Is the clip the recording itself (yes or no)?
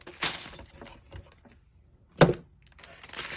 yes